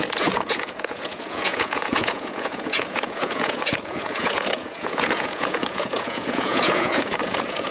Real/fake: fake